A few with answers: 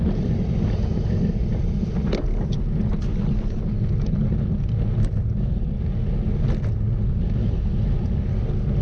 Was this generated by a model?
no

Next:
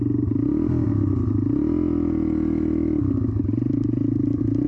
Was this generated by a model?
no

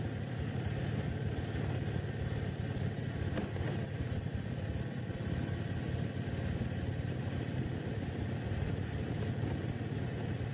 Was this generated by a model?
no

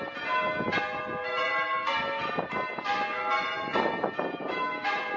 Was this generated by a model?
no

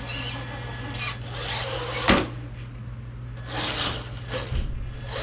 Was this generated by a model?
no